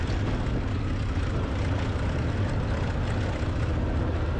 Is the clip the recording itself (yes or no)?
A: yes